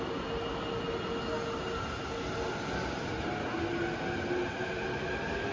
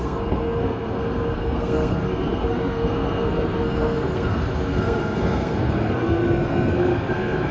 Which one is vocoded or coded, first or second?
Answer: second